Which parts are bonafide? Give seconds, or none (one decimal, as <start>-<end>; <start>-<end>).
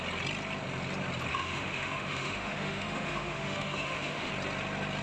0.0-1.3; 4.3-5.0